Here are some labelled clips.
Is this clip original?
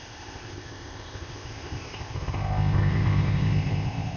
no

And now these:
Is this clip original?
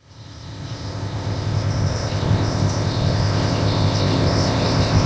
no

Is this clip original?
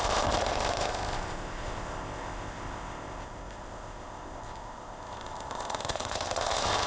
no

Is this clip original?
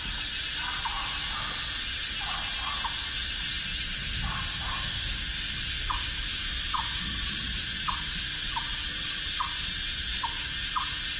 yes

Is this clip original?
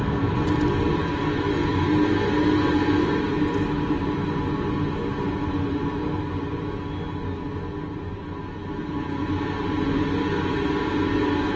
yes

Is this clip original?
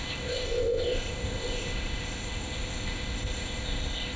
no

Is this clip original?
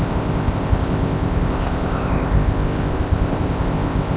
no